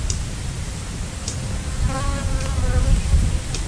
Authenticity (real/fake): real